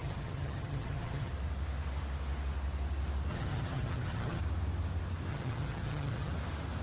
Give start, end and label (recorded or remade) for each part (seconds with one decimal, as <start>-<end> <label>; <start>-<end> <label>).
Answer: 0.0-1.3 remade; 1.3-3.3 recorded; 3.3-4.4 remade; 4.4-5.3 recorded; 5.3-6.3 remade; 6.3-6.8 recorded